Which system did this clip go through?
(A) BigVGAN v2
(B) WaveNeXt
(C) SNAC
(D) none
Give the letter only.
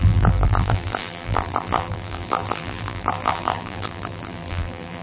A